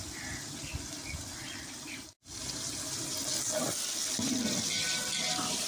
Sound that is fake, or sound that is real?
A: real